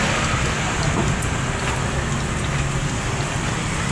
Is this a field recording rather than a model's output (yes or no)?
yes